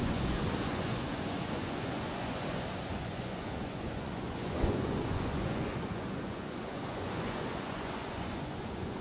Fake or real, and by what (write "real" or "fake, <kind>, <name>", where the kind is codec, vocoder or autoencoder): fake, vocoder, Vocos